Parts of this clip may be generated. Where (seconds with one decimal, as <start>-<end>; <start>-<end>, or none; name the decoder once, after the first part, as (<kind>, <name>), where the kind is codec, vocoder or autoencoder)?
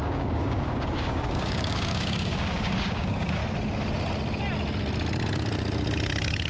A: 0.0-3.4 (codec, DAC)